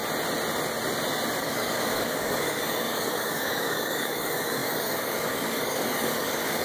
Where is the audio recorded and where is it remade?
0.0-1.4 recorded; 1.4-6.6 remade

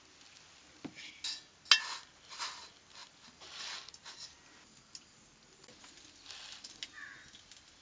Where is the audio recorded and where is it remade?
0.0-7.8 recorded

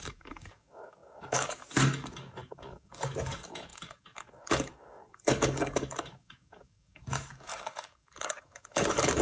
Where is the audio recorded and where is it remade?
0.0-9.2 remade

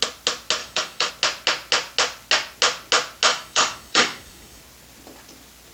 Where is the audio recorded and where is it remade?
0.0-0.6 recorded; 0.6-1.1 remade; 1.1-3.3 recorded; 3.3-4.6 remade; 4.6-5.7 recorded

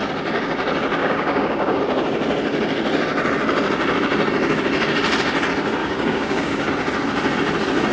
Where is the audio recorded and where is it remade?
0.0-1.0 recorded; 1.0-1.8 remade; 1.8-5.8 recorded; 5.8-6.7 remade; 6.7-7.9 recorded

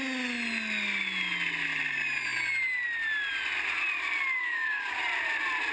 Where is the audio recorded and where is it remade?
0.0-4.4 recorded; 4.4-5.0 remade; 5.0-5.7 recorded

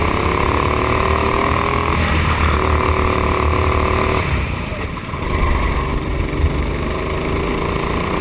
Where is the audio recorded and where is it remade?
0.0-1.2 recorded; 1.2-1.9 remade; 1.9-8.2 recorded

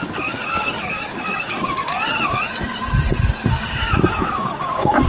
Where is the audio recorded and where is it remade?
0.0-1.9 remade; 1.9-3.5 recorded; 3.5-5.1 remade